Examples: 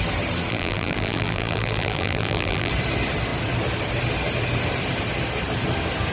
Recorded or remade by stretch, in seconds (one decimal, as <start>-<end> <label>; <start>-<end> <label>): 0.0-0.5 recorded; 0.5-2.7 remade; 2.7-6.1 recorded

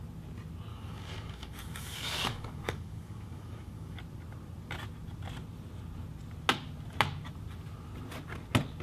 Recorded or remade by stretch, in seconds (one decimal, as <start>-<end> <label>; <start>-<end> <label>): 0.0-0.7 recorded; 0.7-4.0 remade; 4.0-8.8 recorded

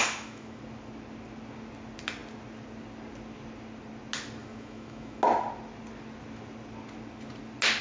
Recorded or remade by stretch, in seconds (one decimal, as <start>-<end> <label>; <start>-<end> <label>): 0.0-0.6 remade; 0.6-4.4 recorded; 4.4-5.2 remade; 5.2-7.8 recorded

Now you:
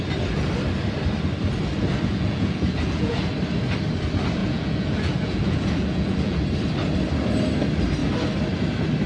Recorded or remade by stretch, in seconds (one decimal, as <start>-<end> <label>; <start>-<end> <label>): 0.0-2.1 recorded; 2.1-3.3 remade; 3.3-4.4 recorded; 4.4-6.4 remade; 6.4-9.1 recorded

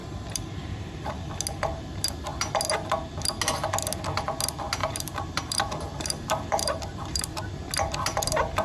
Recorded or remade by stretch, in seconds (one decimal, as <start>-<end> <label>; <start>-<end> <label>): 0.0-1.3 remade; 1.3-4.8 recorded; 4.8-7.4 remade; 7.4-8.6 recorded